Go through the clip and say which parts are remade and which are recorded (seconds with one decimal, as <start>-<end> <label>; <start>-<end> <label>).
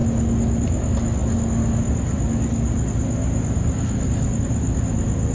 0.0-5.3 recorded